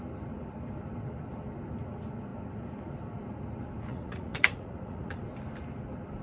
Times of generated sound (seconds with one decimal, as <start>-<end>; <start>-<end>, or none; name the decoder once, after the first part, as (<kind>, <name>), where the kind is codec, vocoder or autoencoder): 3.9-5.2 (vocoder, Vocos)